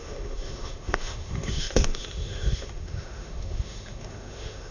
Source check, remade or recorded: remade